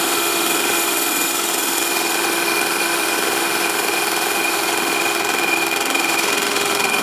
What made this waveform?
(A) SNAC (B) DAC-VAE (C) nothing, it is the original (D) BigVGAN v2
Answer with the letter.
B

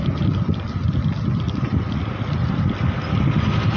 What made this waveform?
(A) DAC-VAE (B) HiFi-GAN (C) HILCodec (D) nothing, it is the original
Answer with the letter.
D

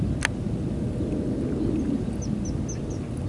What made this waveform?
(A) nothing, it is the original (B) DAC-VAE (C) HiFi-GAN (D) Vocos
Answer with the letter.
A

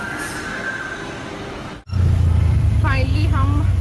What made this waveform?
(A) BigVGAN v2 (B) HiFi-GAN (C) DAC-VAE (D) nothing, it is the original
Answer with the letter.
D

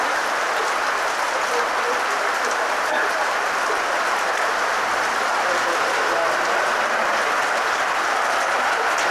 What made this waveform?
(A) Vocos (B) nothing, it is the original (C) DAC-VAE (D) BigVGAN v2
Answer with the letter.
B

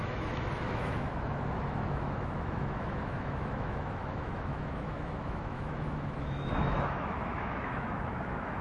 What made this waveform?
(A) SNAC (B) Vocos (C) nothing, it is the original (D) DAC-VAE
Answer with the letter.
D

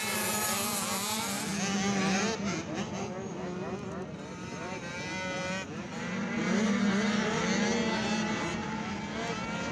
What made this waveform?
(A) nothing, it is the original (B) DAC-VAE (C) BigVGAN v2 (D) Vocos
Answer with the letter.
A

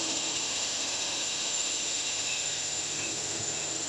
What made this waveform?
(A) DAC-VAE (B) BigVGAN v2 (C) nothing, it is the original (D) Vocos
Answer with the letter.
A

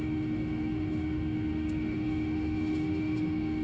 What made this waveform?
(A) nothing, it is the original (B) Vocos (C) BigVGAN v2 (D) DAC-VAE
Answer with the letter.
D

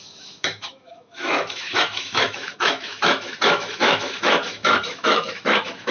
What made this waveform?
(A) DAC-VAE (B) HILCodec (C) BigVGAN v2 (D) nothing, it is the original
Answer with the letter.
A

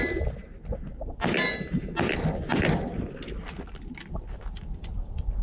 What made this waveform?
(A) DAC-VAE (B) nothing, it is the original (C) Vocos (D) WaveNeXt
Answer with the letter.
B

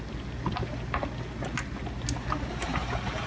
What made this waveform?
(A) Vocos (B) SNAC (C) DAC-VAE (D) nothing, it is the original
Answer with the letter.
D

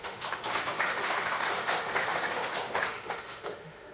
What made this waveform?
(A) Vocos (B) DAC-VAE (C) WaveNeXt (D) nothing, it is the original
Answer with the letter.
B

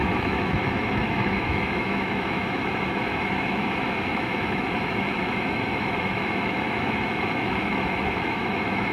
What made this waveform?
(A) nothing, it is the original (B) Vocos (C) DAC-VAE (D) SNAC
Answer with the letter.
C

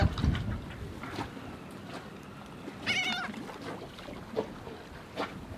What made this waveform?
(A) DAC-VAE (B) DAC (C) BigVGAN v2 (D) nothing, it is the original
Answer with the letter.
D